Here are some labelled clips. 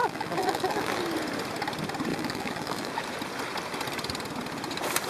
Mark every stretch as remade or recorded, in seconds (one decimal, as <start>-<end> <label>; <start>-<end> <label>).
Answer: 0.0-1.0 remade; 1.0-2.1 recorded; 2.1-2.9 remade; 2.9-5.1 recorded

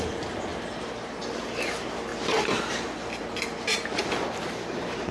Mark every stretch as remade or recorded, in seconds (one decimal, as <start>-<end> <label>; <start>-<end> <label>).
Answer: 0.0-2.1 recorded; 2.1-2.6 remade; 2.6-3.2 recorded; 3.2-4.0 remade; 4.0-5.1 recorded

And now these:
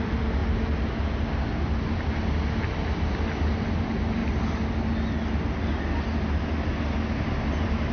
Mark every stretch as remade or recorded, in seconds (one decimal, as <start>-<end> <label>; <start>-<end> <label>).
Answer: 0.0-0.4 remade; 0.4-3.7 recorded; 3.7-4.2 remade; 4.2-7.3 recorded; 7.3-7.9 remade

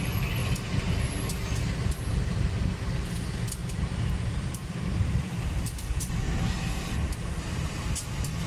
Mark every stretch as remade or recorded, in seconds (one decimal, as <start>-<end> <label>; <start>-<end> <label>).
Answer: 0.0-0.4 recorded; 0.4-0.9 remade; 0.9-1.8 recorded; 1.8-2.5 remade; 2.5-3.6 recorded; 3.6-6.1 remade; 6.1-8.5 recorded

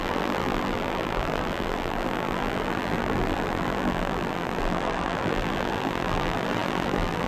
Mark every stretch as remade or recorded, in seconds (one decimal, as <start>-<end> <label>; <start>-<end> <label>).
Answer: 0.0-7.3 remade

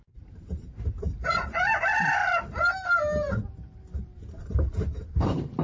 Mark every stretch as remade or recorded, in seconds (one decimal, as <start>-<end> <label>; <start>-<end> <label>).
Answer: 0.0-2.2 remade; 2.2-4.5 recorded; 4.5-5.6 remade

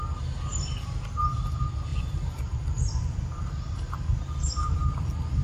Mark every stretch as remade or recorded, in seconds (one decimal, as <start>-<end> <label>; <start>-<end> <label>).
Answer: 0.0-1.9 recorded; 1.9-4.9 remade; 4.9-5.4 recorded